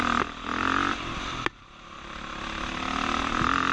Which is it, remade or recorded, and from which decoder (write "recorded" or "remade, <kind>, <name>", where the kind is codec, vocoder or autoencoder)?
recorded